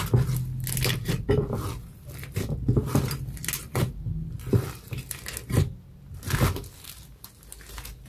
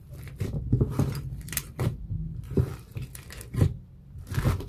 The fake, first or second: second